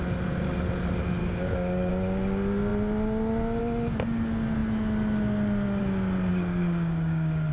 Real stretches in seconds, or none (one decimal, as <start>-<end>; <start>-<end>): 0.0-1.2; 1.9-6.3